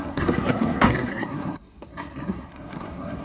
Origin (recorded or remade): remade